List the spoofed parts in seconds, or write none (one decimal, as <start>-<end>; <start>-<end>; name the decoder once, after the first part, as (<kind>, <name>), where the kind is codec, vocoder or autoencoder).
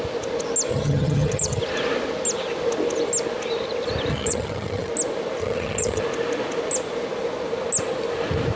0.7-1.6 (vocoder, HiFi-GAN); 4.1-4.9; 5.4-6.0